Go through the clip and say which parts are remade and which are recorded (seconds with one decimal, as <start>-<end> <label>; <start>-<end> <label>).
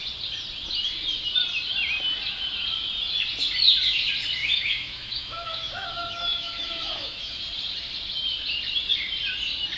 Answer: 0.0-4.4 recorded; 4.4-7.4 remade; 7.4-9.8 recorded